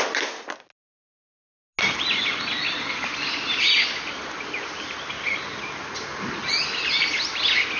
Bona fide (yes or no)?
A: yes